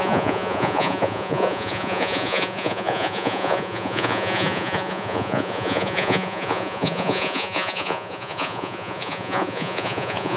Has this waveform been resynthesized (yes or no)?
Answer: yes